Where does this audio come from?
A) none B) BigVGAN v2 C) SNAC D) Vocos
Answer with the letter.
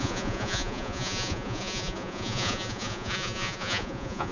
D